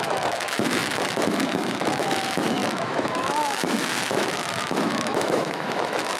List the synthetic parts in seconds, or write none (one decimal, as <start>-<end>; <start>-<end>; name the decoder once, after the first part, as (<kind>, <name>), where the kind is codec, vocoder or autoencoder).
0.0-6.2 (autoencoder, DAC-VAE)